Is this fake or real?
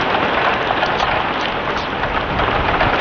real